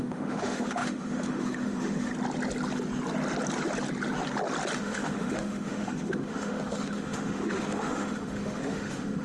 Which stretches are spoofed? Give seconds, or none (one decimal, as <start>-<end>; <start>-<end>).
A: 0.0-2.1; 4.8-9.2